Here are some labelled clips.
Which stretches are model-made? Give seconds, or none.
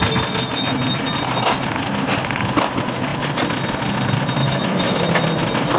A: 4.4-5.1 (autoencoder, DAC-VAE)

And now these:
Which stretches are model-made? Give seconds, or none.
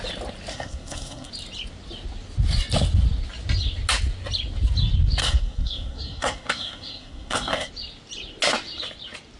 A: 0.5-1.3 (codec, SNAC); 5.2-7.7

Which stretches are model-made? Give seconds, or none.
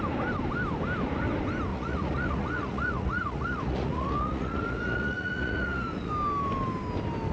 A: 1.7-6.1 (vocoder, Vocos)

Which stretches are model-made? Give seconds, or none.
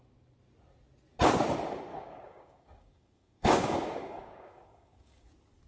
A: 1.9-5.3 (codec, DAC)